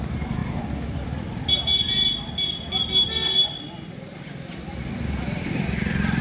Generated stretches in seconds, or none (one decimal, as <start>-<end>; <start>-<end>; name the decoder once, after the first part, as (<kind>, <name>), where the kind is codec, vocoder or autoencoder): 0.4-1.4 (vocoder, BigVGAN v2)